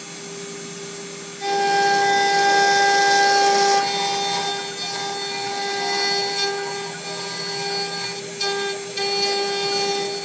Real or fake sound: real